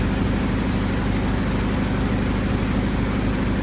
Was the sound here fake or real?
real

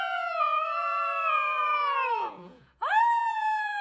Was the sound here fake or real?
fake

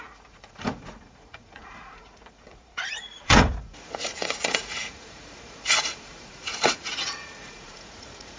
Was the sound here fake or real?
fake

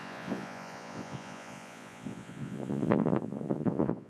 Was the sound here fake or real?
fake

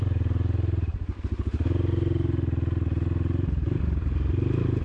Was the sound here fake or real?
real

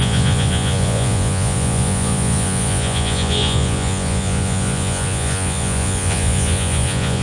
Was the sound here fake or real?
fake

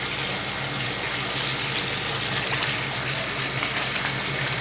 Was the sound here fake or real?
real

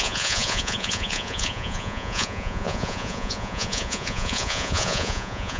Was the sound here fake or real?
fake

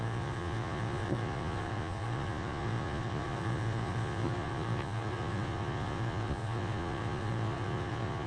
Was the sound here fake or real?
fake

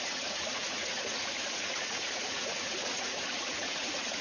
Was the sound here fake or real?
fake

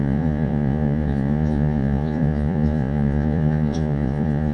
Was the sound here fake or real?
fake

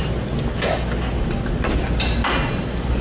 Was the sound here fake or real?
real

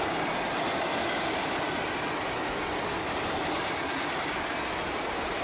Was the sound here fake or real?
real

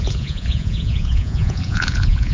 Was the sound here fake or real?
fake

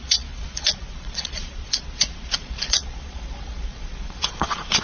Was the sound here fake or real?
fake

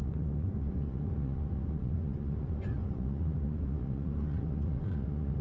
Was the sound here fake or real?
fake